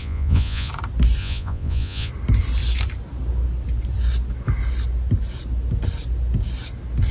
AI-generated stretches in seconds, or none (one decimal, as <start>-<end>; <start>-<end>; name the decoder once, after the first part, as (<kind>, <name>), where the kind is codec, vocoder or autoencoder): 0.0-0.7 (vocoder, Vocos); 1.2-2.1